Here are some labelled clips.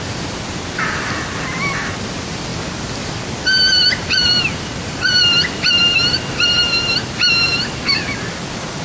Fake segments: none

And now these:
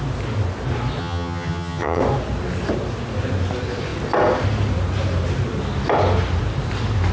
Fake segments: 1.0-2.0 (vocoder, HiFi-GAN)

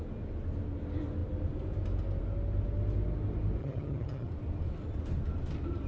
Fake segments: 3.6-4.3 (vocoder, HiFi-GAN)

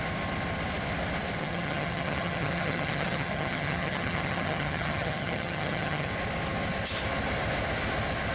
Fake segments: 1.4-6.1 (vocoder, HiFi-GAN)

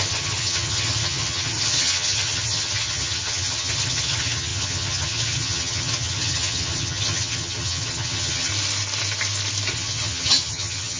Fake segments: 0.0-8.5 (vocoder, HiFi-GAN); 9.7-11.0

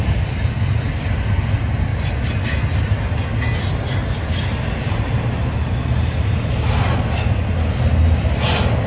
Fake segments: none

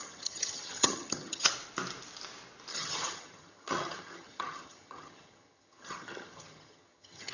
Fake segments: 0.0-1.5 (vocoder, HiFi-GAN); 2.7-7.3

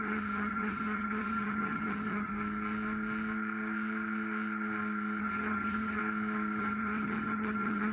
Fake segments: 0.0-2.3 (vocoder, HiFi-GAN); 5.2-6.0; 6.6-7.9